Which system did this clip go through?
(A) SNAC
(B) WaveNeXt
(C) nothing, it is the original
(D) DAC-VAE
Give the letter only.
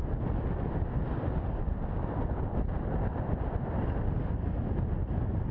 C